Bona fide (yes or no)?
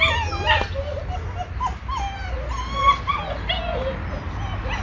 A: yes